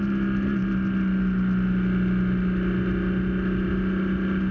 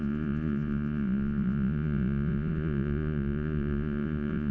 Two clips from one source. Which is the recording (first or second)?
first